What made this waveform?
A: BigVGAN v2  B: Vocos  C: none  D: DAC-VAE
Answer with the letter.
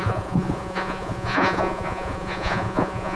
B